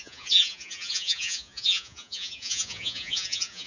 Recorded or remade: remade